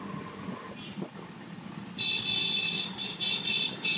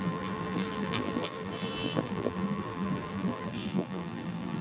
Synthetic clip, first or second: second